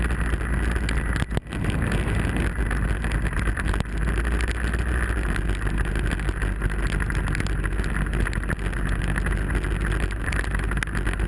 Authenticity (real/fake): real